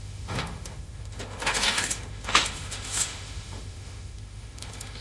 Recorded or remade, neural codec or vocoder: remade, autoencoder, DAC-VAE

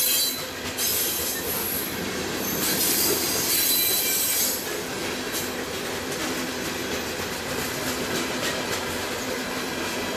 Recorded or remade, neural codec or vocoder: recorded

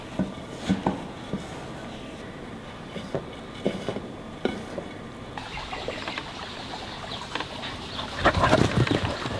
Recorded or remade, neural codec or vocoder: recorded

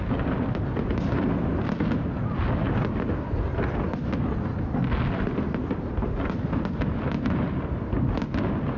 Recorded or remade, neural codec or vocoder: recorded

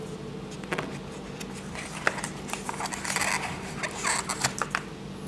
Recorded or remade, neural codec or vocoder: recorded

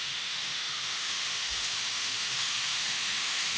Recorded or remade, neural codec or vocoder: remade, autoencoder, DAC-VAE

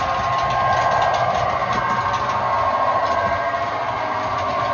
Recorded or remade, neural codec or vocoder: recorded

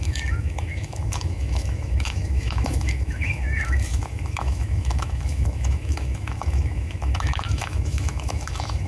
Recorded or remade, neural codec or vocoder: remade, autoencoder, DAC-VAE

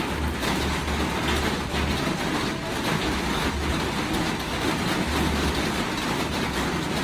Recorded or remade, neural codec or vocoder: recorded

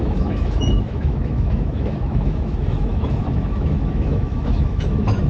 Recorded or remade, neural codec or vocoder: remade, autoencoder, DAC-VAE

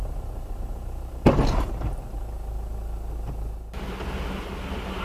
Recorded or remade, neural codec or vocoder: recorded